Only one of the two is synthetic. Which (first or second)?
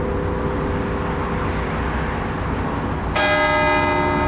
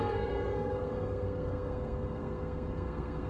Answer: second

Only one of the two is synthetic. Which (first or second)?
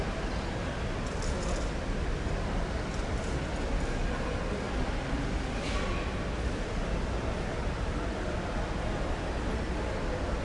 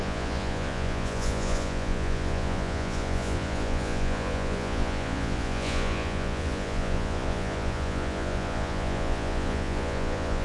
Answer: second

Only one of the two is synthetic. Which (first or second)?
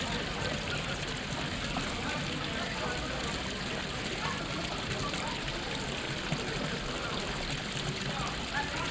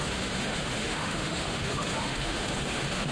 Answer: second